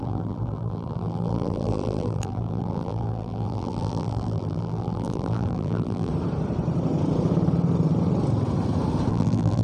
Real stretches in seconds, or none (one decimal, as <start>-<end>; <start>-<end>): 6.1-9.1